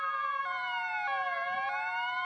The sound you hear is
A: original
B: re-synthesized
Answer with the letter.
A